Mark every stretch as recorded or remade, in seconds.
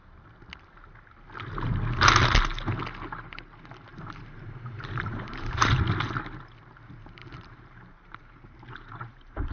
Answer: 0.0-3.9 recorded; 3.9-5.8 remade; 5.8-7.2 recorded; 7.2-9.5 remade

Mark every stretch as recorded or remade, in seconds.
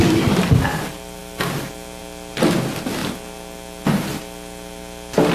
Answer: 0.0-5.3 recorded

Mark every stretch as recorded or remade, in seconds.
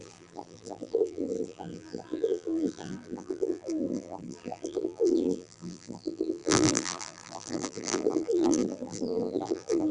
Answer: 0.0-9.9 remade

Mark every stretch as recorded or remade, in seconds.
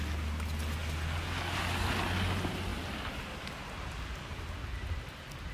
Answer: 0.0-5.5 recorded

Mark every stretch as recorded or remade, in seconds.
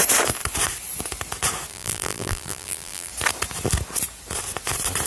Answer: 0.0-1.7 recorded; 1.7-3.1 remade; 3.1-5.1 recorded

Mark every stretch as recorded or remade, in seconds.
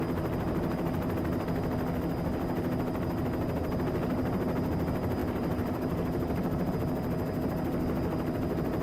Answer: 0.0-5.2 recorded; 5.2-6.7 remade; 6.7-8.8 recorded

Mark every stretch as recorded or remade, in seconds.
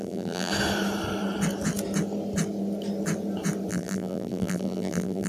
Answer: 0.0-0.5 remade; 0.5-3.7 recorded; 3.7-5.3 remade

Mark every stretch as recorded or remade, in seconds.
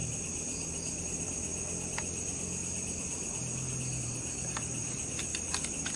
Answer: 0.0-1.5 remade; 1.5-4.0 recorded; 4.0-5.3 remade; 5.3-6.0 recorded